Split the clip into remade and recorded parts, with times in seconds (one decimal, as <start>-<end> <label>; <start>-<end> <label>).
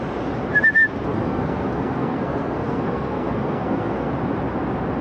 0.0-1.1 recorded; 1.1-4.1 remade; 4.1-5.0 recorded